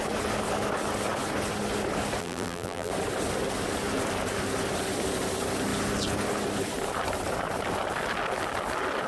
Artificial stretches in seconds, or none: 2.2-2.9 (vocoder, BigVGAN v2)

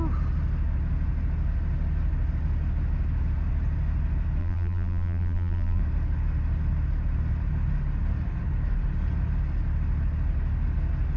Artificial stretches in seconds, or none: 4.4-5.8 (vocoder, BigVGAN v2)